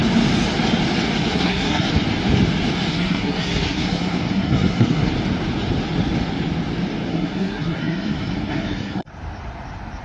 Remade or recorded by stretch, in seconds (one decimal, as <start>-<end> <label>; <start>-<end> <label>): 0.0-1.3 recorded; 1.3-1.9 remade; 1.9-2.9 recorded; 2.9-5.1 remade; 5.1-7.1 recorded; 7.1-9.1 remade; 9.1-10.0 recorded